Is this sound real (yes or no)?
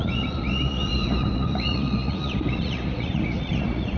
no